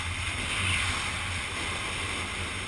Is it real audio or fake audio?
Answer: real